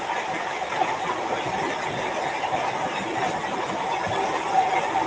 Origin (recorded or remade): recorded